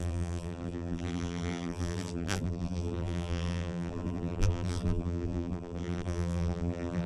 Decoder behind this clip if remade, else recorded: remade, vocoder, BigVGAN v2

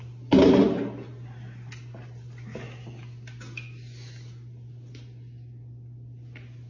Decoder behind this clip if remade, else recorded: recorded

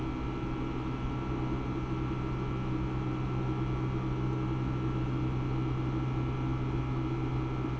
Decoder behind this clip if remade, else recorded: recorded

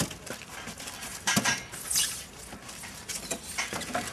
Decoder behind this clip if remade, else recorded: recorded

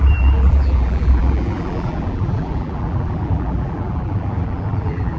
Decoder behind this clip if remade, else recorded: remade, vocoder, BigVGAN v2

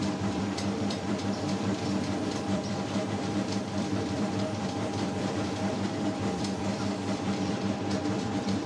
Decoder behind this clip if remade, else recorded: remade, vocoder, BigVGAN v2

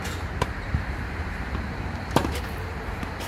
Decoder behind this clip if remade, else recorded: remade, vocoder, BigVGAN v2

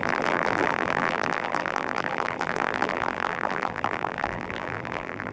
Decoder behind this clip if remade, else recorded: remade, vocoder, BigVGAN v2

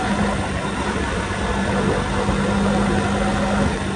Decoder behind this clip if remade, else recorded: recorded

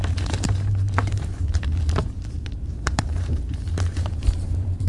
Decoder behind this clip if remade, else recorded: remade, vocoder, BigVGAN v2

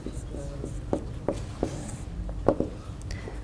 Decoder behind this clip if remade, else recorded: remade, vocoder, BigVGAN v2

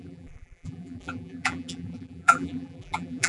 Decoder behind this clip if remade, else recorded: remade, vocoder, BigVGAN v2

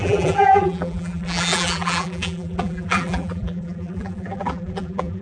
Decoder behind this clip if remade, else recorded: remade, vocoder, BigVGAN v2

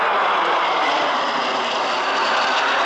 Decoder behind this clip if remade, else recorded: recorded